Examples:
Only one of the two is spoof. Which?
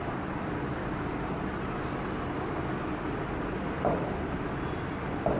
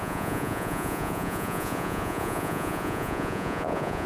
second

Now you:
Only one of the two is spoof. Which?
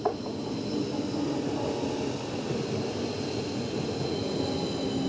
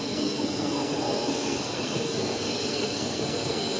second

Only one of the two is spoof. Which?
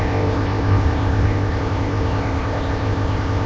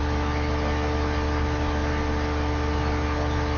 first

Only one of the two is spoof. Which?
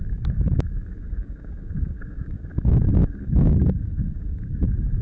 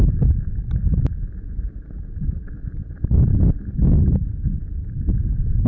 first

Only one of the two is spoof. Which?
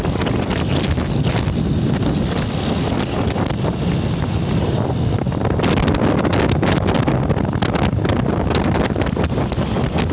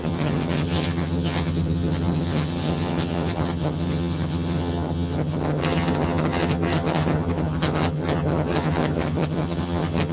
second